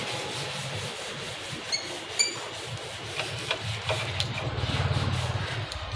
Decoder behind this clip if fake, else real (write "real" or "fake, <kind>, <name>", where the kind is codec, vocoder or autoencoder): fake, vocoder, BigVGAN v2